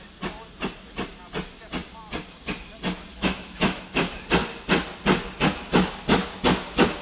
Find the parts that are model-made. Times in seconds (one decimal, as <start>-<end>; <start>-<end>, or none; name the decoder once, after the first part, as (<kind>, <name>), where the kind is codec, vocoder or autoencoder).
3.1-3.8 (autoencoder, DAC-VAE)